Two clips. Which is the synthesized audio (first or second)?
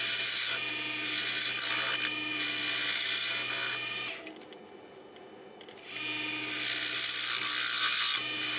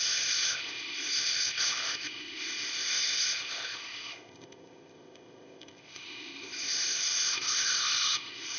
second